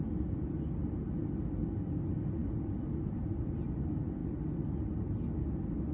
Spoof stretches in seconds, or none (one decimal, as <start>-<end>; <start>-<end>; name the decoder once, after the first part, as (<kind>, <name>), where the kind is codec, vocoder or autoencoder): 4.2-4.8 (vocoder, BigVGAN v2)

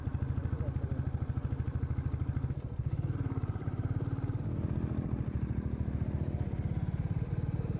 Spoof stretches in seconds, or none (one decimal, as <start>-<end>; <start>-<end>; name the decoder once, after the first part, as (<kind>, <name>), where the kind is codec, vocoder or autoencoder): 0.0-7.8 (vocoder, BigVGAN v2)

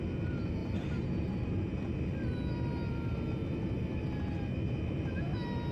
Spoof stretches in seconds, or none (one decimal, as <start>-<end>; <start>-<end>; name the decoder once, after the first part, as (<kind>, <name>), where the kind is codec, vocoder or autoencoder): 0.6-1.6 (vocoder, BigVGAN v2)

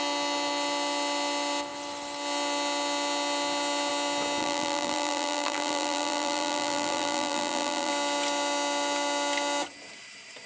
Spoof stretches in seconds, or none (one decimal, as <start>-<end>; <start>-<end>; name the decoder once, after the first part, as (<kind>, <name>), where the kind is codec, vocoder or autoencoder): 4.4-7.9 (vocoder, BigVGAN v2)

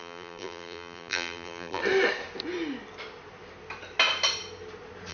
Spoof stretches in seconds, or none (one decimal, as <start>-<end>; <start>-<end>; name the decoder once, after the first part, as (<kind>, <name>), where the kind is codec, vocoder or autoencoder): 0.0-1.8 (vocoder, BigVGAN v2)

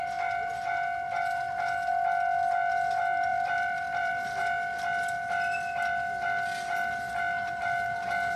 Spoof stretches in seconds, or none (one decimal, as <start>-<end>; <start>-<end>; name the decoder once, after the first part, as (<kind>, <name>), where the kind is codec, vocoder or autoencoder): 3.3-4.1 (vocoder, BigVGAN v2)